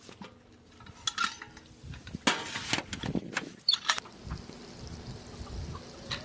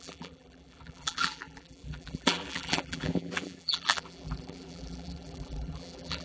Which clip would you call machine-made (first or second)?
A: second